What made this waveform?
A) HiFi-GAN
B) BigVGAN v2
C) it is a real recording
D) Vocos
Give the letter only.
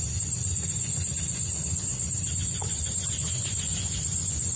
D